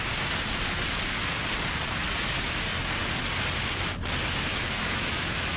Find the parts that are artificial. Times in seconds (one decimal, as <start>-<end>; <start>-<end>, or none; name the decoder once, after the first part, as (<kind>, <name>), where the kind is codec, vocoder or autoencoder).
4.5-5.6 (autoencoder, DAC-VAE)